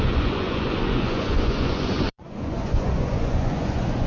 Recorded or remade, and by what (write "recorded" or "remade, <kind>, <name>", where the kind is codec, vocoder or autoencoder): remade, vocoder, Vocos